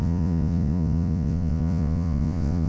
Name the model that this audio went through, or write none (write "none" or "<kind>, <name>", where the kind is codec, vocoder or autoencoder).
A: vocoder, Vocos